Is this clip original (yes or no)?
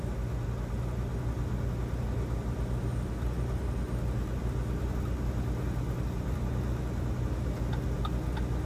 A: yes